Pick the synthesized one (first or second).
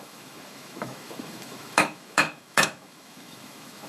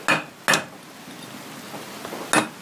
first